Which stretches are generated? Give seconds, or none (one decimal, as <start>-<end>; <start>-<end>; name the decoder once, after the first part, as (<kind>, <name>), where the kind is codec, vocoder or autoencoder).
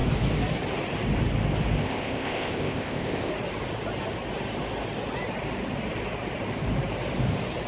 1.8-3.3 (codec, ZipCodec)